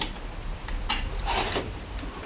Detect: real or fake real